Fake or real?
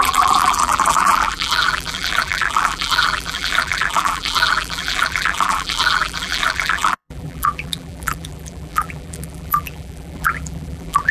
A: fake